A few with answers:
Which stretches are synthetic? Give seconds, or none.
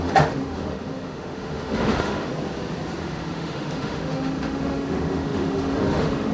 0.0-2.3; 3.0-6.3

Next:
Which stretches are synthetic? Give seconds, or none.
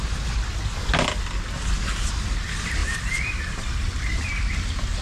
none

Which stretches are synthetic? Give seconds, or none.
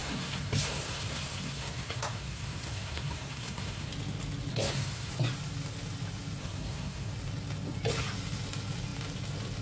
0.0-3.9; 4.5-5.1; 6.4-7.1